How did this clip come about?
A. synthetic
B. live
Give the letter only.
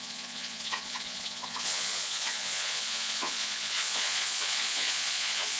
A